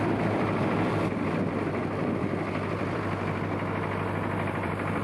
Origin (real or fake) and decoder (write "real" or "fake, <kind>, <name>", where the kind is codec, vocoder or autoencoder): fake, vocoder, BigVGAN v2